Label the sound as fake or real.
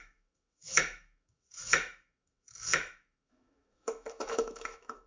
fake